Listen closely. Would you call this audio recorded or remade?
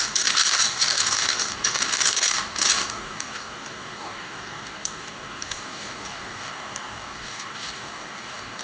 remade